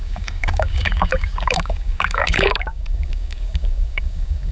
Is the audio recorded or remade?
remade